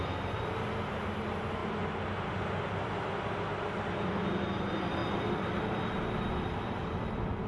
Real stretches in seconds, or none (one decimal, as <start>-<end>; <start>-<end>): 0.0-7.5